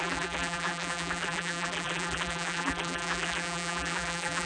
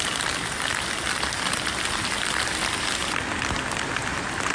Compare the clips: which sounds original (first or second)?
second